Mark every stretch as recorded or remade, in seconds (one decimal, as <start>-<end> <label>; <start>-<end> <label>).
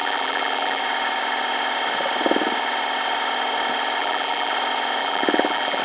0.0-0.8 remade; 0.8-4.0 recorded; 4.0-4.5 remade; 4.5-5.0 recorded; 5.0-5.8 remade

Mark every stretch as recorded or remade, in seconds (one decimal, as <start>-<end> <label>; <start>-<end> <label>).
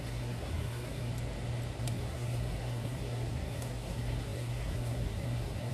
0.0-1.1 remade; 1.1-1.8 recorded; 1.8-5.7 remade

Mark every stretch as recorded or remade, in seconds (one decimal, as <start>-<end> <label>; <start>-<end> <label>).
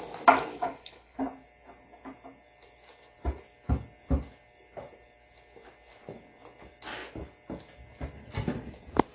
0.0-0.5 recorded; 0.5-1.2 remade; 1.2-9.1 recorded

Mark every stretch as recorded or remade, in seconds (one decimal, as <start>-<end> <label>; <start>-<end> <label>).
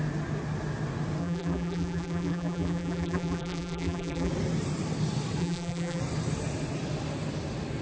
0.0-1.2 recorded; 1.2-4.3 remade; 4.3-5.4 recorded; 5.4-6.0 remade; 6.0-7.8 recorded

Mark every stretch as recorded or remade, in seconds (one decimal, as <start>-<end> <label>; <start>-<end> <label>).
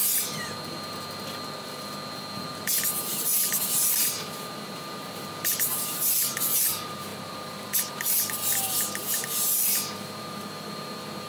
0.0-3.4 recorded; 3.4-11.3 remade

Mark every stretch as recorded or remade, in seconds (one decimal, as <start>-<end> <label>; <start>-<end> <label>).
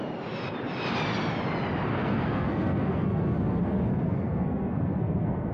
0.0-1.9 recorded; 1.9-5.5 remade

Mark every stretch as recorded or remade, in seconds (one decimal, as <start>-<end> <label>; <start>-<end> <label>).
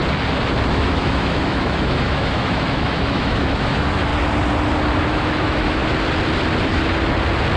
0.0-0.7 recorded; 0.7-4.1 remade; 4.1-5.0 recorded; 5.0-5.8 remade; 5.8-7.6 recorded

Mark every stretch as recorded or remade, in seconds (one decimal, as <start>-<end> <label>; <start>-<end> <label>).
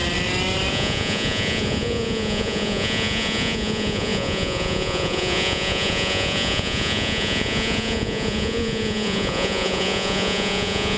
0.0-0.7 recorded; 0.7-11.0 remade